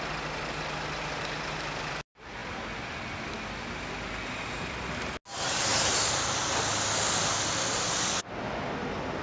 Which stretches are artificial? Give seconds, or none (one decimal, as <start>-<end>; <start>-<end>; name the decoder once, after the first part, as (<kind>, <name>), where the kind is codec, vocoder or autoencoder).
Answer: none

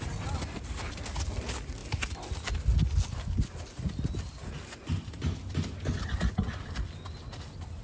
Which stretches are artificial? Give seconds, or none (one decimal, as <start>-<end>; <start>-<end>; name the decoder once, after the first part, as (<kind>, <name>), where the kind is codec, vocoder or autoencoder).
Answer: none

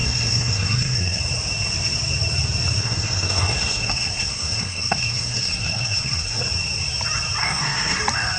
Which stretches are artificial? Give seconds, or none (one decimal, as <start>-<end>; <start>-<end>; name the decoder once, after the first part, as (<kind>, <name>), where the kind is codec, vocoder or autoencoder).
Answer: 0.0-1.2 (codec, SNAC); 2.8-6.4; 7.4-8.0